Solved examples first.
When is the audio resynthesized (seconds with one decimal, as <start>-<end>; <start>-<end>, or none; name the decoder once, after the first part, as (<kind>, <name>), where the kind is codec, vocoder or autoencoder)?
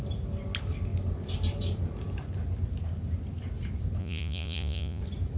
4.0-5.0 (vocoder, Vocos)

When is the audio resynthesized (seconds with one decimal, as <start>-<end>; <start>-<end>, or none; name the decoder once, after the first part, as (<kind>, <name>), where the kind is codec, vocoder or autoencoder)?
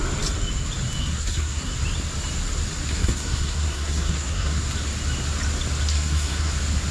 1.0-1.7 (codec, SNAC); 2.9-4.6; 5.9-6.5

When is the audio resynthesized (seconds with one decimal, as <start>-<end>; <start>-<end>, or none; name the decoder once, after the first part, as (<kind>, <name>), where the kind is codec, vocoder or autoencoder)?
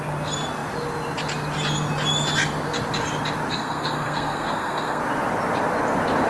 3.5-5.0 (codec, SNAC)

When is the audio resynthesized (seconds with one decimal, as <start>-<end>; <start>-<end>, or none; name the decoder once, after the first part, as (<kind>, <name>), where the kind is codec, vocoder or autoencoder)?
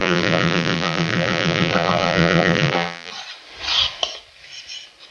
0.0-3.1 (vocoder, BigVGAN v2)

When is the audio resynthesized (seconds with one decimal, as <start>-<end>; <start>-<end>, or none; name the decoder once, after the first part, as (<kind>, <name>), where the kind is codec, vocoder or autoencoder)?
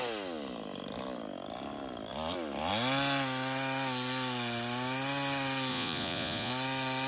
5.7-6.5 (vocoder, Vocos)